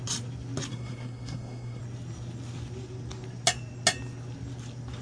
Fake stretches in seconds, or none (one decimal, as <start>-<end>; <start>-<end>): 0.7-1.8